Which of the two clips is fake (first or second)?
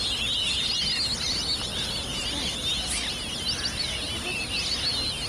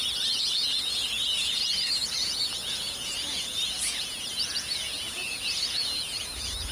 second